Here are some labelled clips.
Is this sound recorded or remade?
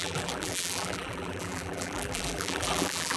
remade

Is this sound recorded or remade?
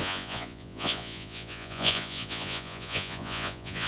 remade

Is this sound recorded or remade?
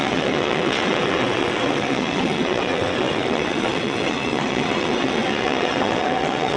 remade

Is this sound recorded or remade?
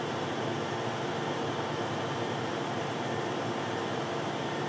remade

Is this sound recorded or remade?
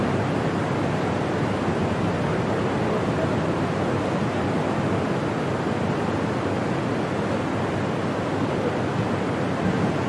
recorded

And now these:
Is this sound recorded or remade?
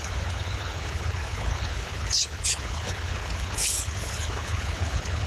remade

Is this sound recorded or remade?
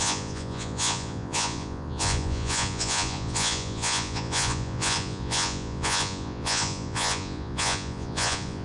remade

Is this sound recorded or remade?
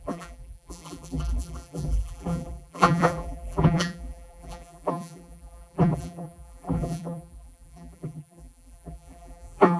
remade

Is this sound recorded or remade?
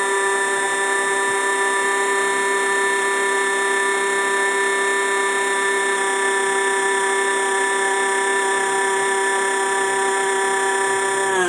recorded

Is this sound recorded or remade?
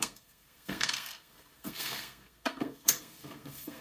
remade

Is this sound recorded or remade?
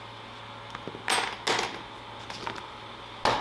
recorded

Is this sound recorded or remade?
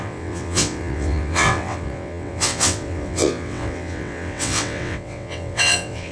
remade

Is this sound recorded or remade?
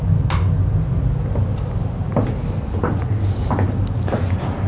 recorded